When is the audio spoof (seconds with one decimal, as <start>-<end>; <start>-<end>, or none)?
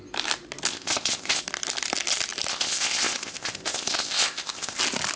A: 0.7-1.4; 2.5-4.8